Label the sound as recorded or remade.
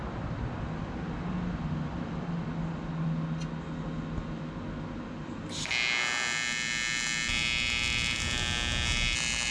recorded